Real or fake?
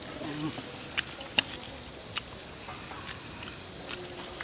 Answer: real